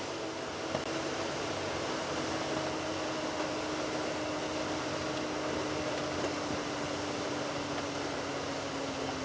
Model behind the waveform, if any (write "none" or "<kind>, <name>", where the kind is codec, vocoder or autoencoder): none